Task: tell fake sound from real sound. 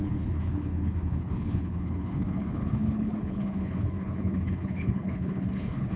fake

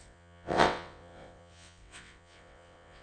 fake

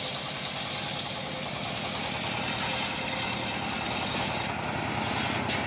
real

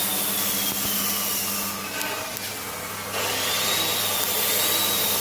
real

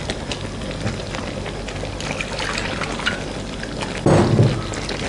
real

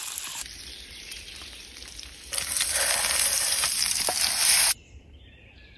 fake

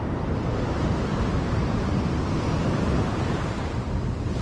fake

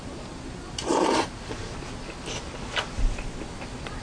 real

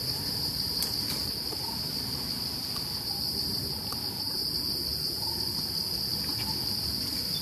real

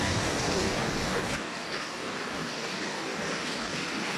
fake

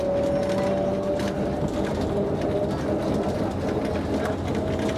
real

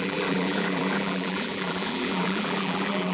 fake